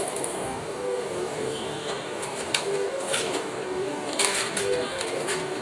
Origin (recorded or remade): remade